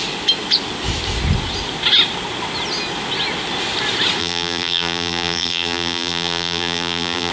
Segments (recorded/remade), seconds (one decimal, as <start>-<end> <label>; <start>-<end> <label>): 0.0-4.2 recorded; 4.2-7.3 remade